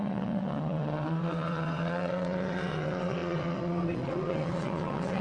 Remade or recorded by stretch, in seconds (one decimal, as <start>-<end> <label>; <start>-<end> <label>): 0.0-5.2 remade